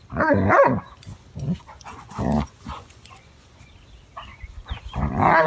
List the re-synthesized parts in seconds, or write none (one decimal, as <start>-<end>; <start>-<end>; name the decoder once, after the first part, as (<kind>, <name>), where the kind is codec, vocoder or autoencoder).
1.1-3.7 (vocoder, Vocos); 4.3-5.1

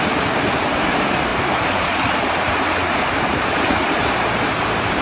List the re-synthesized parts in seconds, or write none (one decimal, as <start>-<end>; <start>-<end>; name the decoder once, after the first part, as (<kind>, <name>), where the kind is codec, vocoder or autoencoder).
0.0-5.0 (vocoder, BigVGAN v2)